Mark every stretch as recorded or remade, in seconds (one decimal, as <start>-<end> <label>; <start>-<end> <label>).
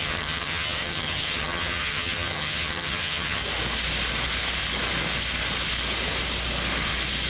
0.0-3.4 remade; 3.4-7.3 recorded